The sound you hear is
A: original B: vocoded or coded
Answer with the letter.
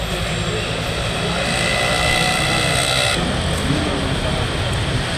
A